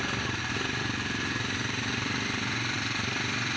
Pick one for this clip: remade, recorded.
remade